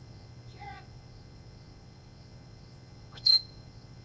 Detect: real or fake fake